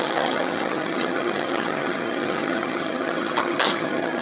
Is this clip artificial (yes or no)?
yes